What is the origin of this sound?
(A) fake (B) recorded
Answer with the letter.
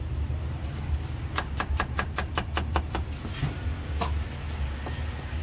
B